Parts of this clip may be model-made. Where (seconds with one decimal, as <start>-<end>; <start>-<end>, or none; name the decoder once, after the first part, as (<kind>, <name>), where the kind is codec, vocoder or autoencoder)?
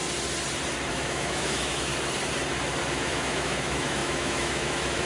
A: 0.9-1.9 (autoencoder, DAC-VAE); 2.9-5.0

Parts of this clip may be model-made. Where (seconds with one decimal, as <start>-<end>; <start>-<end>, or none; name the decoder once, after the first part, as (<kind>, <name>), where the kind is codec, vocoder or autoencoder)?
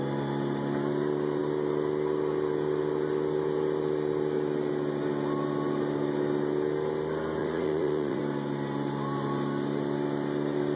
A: 7.4-8.2 (vocoder, Vocos)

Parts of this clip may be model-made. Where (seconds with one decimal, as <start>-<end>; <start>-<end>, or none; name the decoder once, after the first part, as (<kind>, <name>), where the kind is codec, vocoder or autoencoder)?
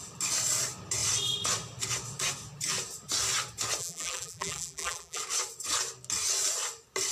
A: 3.8-5.2 (vocoder, BigVGAN v2)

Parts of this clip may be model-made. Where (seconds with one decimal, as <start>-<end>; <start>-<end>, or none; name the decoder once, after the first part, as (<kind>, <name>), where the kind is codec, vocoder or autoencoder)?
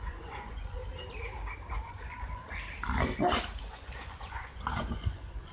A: 0.0-0.8 (vocoder, Vocos); 1.7-2.4; 3.6-5.5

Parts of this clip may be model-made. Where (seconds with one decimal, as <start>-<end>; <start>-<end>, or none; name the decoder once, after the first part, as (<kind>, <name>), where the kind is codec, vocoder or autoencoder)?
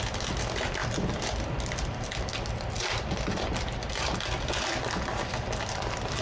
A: 0.8-4.5 (vocoder, BigVGAN v2)